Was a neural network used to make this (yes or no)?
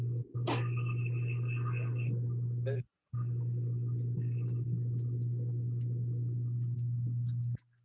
no